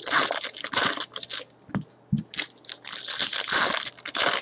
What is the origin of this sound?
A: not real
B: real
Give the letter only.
B